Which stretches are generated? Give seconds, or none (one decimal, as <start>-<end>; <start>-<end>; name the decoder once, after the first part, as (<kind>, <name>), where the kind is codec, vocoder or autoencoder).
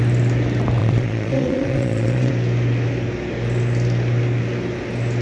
0.8-2.3 (vocoder, Vocos)